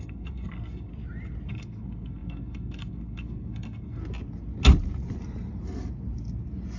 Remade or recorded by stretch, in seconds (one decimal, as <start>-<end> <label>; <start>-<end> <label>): 0.0-0.9 remade; 0.9-1.5 recorded; 1.5-4.0 remade; 4.0-6.8 recorded